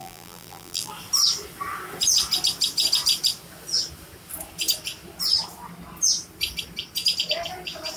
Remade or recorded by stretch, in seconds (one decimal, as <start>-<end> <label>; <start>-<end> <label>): 0.0-0.9 remade; 0.9-8.0 recorded

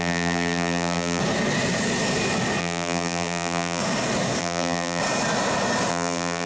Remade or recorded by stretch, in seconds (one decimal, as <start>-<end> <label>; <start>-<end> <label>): 0.0-1.2 remade; 1.2-2.6 recorded; 2.6-3.8 remade; 3.8-4.4 recorded; 4.4-5.0 remade; 5.0-5.9 recorded; 5.9-6.5 remade

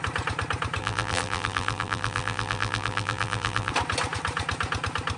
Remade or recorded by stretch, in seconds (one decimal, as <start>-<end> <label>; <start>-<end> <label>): 0.0-0.8 recorded; 0.8-3.7 remade; 3.7-5.2 recorded

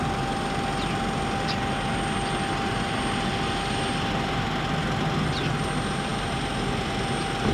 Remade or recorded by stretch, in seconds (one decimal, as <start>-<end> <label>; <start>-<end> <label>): 0.0-7.5 recorded

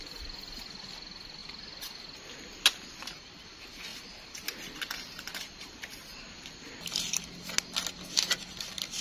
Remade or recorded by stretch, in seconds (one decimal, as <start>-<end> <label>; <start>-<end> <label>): 0.0-9.0 recorded

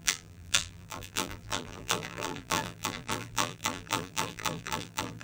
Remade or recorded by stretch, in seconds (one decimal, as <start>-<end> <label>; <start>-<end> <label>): 0.0-5.2 remade